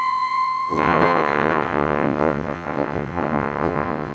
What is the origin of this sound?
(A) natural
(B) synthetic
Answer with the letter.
B